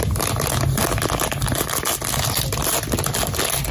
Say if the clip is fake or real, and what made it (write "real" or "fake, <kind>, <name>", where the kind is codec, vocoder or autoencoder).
real